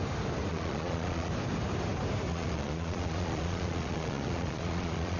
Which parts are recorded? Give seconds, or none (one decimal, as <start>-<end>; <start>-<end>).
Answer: 0.0-0.5; 1.3-2.3